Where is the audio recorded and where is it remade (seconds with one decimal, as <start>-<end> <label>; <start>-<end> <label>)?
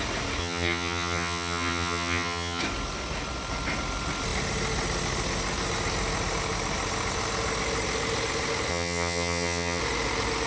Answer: 0.0-0.4 recorded; 0.4-2.6 remade; 2.6-8.7 recorded; 8.7-9.8 remade; 9.8-10.5 recorded